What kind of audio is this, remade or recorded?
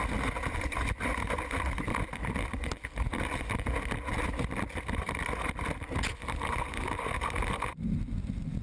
recorded